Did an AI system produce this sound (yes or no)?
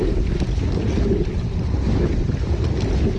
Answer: no